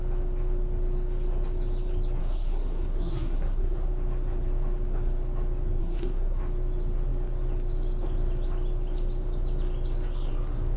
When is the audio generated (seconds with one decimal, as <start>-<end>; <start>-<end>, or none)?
2.2-3.9; 5.8-6.4